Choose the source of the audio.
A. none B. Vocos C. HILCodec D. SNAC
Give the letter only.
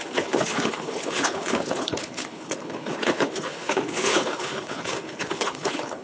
C